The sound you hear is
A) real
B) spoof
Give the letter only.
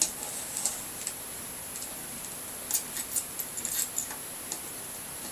A